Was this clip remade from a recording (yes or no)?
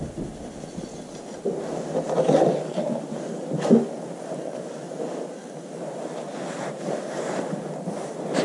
no